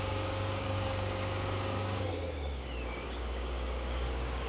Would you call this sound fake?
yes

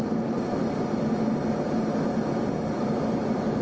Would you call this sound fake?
no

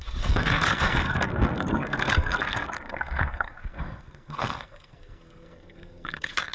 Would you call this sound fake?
yes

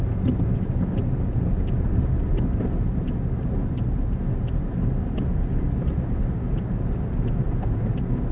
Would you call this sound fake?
no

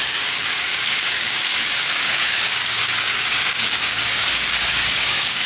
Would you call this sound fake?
yes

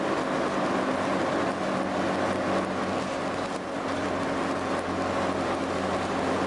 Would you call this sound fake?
no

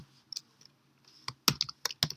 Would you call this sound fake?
no